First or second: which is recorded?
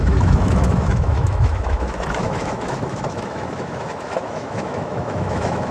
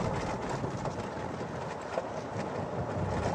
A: second